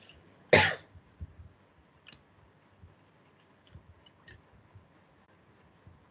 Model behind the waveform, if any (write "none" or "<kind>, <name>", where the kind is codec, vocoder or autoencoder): none